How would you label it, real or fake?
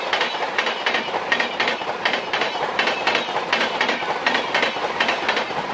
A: fake